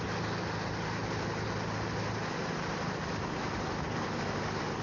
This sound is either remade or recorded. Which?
recorded